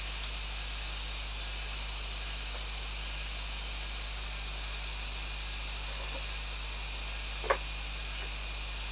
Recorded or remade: recorded